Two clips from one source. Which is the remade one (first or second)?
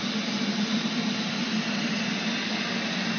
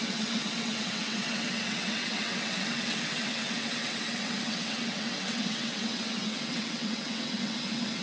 second